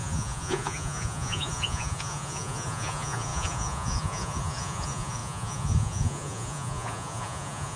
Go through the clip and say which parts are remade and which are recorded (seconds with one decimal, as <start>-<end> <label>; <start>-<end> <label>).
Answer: 0.0-7.8 remade